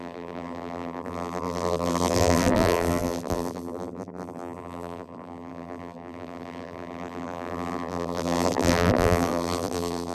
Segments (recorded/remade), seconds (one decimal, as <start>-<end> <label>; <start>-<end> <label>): 0.0-10.1 remade